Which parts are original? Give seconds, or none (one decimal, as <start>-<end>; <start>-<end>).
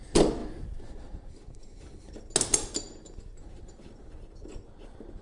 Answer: 0.4-3.5